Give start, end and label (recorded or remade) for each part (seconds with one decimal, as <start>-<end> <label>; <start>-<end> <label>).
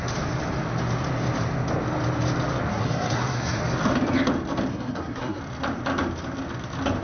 0.0-2.7 recorded; 2.7-3.6 remade; 3.6-4.7 recorded; 4.7-5.4 remade; 5.4-7.0 recorded